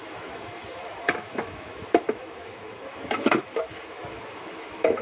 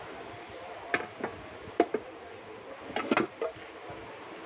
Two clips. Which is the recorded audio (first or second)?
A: second